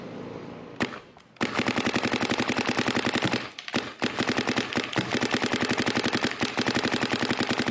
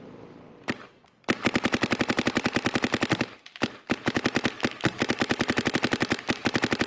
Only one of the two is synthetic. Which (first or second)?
second